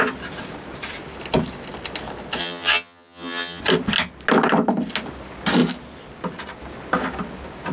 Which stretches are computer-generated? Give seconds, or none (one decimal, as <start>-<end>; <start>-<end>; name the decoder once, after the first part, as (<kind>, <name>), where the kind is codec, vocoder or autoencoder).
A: 2.4-3.6 (vocoder, HiFi-GAN)